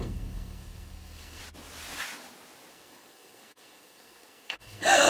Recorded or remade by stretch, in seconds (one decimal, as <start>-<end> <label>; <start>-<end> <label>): 0.0-1.4 remade; 1.4-2.7 recorded; 2.7-5.1 remade